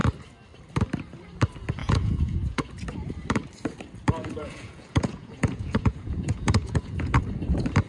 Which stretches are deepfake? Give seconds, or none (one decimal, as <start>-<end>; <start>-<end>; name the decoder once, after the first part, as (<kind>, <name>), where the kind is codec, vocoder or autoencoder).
1.8-2.7 (vocoder, Vocos); 4.2-7.2